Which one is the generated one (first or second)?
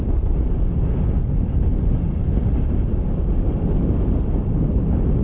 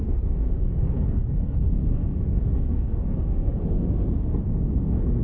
second